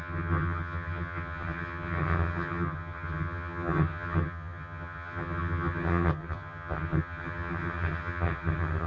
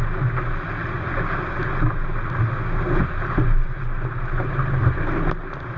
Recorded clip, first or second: second